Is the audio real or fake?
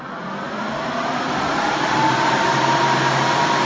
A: real